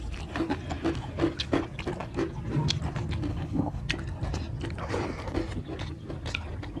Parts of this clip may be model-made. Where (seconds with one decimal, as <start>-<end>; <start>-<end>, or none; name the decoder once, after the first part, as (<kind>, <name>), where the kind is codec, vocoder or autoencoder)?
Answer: 3.3-3.8 (codec, HILCodec)